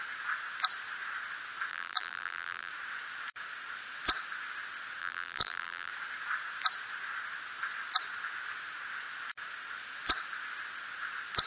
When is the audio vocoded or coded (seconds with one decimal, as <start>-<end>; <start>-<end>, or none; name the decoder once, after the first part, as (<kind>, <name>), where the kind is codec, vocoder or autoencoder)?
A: 1.7-2.7 (vocoder, BigVGAN v2); 5.0-5.9